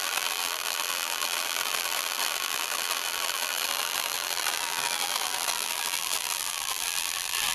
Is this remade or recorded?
remade